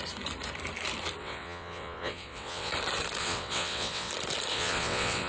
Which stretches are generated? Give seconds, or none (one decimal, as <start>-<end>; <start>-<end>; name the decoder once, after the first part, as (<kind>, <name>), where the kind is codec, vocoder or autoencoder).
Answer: 1.2-2.7 (vocoder, WaveNeXt); 3.2-4.1; 4.5-5.3